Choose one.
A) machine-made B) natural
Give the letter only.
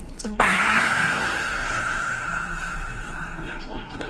A